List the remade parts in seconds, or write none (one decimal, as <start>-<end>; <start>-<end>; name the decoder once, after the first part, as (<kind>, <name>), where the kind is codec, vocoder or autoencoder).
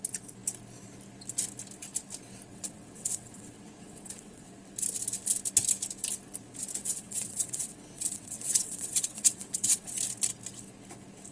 2.5-4.5 (vocoder, WaveNeXt); 6.8-10.0